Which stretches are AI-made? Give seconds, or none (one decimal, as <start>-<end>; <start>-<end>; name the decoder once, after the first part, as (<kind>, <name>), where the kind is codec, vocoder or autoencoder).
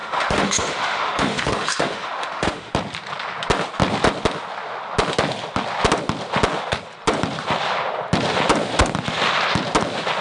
0.0-2.7 (autoencoder, DAC-VAE)